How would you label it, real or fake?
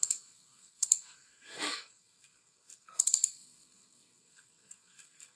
fake